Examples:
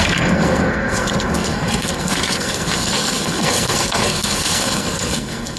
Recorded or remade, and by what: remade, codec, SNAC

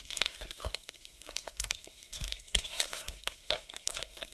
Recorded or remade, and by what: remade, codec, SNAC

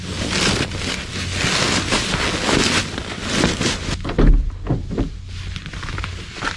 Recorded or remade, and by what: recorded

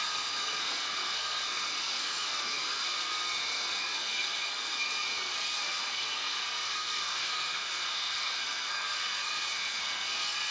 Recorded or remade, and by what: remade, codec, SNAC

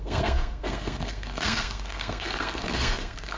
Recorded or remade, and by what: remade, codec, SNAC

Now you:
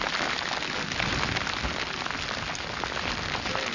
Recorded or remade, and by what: recorded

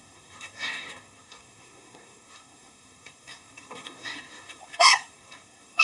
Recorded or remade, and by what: remade, codec, SNAC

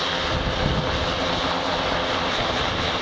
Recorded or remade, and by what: recorded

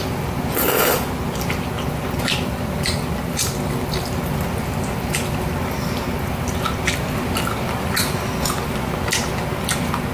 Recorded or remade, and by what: recorded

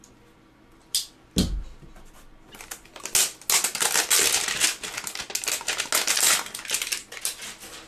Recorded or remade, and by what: recorded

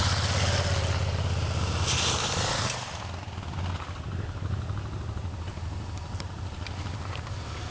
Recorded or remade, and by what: recorded